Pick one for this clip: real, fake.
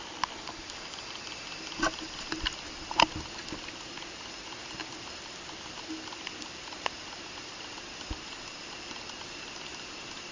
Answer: real